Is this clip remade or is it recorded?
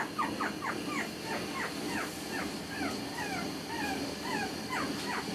recorded